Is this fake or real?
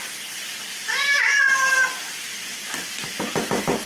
fake